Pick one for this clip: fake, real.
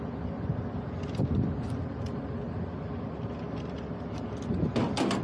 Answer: real